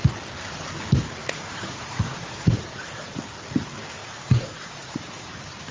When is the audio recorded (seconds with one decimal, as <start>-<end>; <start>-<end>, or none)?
0.0-1.2; 3.2-4.0; 5.3-5.7